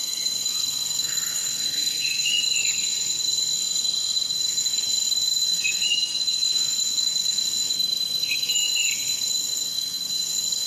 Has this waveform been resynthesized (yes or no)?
yes